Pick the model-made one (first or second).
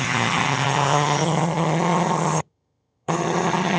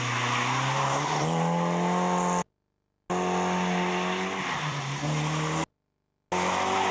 first